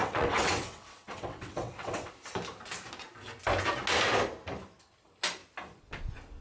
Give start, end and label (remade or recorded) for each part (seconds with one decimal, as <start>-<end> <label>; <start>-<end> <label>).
0.0-2.1 remade; 2.1-6.4 recorded